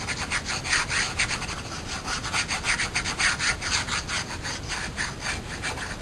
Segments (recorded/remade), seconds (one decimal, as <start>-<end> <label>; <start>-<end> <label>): 0.0-6.0 recorded